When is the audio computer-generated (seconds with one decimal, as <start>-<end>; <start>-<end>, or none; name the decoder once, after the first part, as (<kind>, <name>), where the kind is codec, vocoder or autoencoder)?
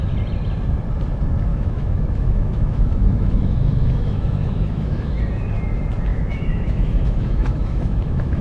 1.5-5.2 (autoencoder, DAC-VAE); 6.1-8.4